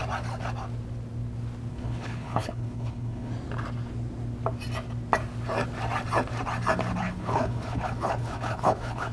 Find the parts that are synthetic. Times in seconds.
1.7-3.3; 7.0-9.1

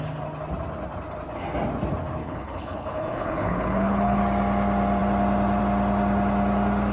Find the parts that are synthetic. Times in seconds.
2.2-4.2

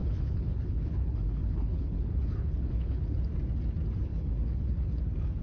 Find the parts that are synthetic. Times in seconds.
0.0-3.2; 4.1-5.0